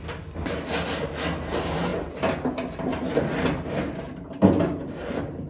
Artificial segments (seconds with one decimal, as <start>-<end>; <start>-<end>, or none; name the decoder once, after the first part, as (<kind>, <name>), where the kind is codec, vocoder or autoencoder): none